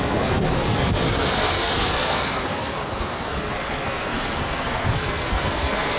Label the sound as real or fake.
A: fake